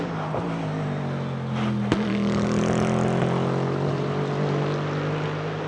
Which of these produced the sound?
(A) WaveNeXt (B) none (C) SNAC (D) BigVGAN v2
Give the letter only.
B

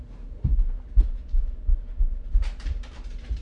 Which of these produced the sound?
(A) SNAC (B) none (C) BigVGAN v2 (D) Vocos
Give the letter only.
C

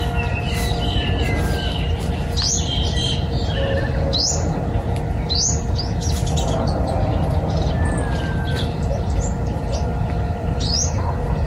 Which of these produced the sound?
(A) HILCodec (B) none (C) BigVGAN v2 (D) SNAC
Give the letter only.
B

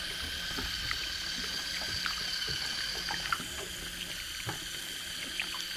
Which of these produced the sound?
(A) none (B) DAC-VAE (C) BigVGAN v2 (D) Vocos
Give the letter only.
A